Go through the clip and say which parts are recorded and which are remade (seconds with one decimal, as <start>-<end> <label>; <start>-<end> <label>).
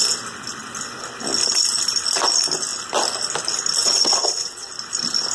0.0-3.8 recorded; 3.8-4.7 remade; 4.7-5.3 recorded